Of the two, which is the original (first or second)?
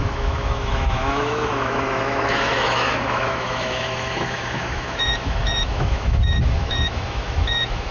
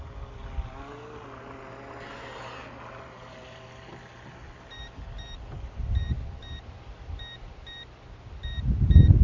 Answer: second